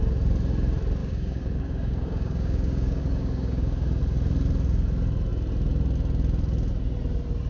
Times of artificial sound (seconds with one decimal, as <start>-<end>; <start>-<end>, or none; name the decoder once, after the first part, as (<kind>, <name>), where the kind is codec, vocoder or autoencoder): 1.0-4.0 (codec, DAC)